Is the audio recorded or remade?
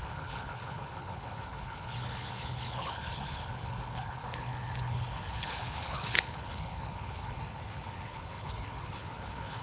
remade